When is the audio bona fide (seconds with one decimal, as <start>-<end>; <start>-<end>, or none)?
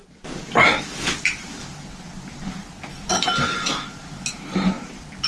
0.0-5.3